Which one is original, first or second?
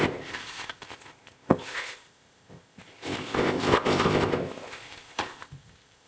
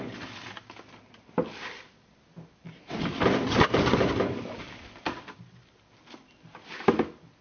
second